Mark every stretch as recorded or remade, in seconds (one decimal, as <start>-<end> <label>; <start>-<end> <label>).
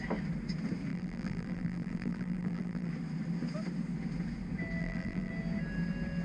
0.0-0.9 recorded; 0.9-2.9 remade; 2.9-4.8 recorded; 4.8-5.3 remade; 5.3-6.2 recorded